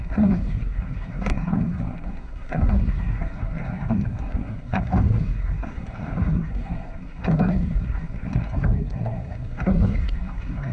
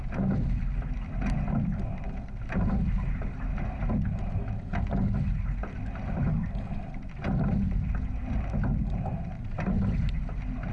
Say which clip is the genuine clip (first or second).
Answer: second